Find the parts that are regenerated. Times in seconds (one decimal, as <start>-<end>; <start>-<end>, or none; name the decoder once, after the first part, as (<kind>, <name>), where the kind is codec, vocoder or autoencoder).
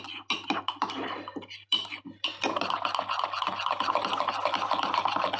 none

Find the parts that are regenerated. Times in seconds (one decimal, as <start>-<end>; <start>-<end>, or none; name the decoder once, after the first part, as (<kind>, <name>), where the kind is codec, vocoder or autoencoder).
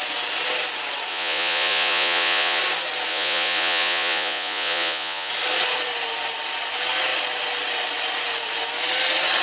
1.1-2.6 (vocoder, Vocos); 3.1-5.3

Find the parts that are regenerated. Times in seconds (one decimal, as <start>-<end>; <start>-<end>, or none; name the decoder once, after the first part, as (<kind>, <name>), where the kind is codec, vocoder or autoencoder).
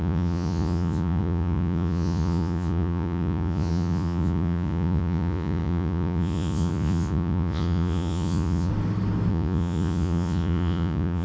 0.0-8.7 (vocoder, Vocos); 9.3-11.2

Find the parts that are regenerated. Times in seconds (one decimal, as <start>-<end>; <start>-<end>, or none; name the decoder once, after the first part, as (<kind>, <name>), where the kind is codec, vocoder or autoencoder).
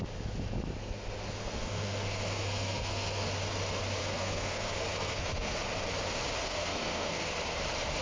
0.8-3.3 (codec, SNAC); 4.0-5.6; 6.4-7.3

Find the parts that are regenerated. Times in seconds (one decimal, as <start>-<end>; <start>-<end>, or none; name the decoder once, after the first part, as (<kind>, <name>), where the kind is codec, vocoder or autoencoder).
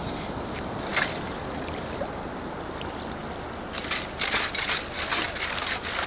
none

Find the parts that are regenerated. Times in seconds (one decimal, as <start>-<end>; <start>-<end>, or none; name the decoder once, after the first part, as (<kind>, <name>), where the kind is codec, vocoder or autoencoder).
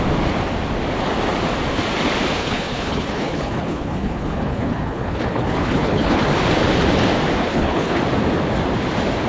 2.4-6.2 (codec, HILCodec); 7.4-8.0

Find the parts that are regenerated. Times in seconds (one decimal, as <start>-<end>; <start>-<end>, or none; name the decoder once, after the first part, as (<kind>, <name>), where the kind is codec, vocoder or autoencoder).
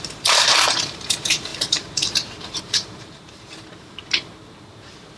0.0-4.0 (vocoder, BigVGAN v2)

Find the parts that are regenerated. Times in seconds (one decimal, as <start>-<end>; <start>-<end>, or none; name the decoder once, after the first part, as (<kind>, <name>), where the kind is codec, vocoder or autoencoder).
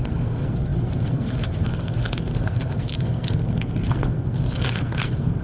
0.0-5.4 (codec, SNAC)